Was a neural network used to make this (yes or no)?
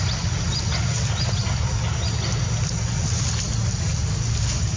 no